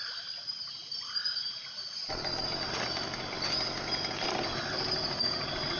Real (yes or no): yes